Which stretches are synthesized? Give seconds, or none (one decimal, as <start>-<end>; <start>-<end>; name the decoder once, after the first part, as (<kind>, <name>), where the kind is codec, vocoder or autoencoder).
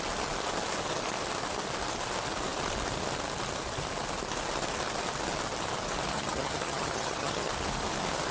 6.1-7.5 (vocoder, HiFi-GAN)